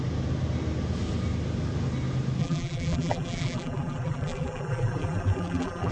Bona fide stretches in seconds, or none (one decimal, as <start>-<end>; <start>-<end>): 0.0-2.4